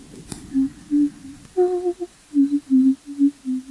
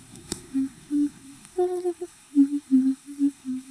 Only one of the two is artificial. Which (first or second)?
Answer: second